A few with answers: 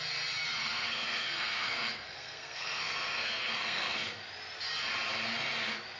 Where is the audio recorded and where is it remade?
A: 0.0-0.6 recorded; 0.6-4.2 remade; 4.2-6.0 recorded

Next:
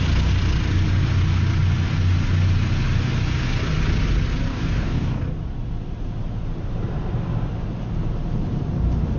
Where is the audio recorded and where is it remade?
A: 0.0-4.5 recorded; 4.5-5.2 remade; 5.2-9.2 recorded